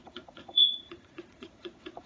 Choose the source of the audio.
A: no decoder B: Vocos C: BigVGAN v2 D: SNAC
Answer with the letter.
B